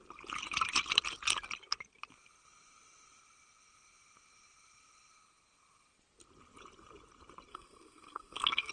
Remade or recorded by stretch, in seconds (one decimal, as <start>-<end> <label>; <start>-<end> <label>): 0.0-7.5 recorded; 7.5-8.7 remade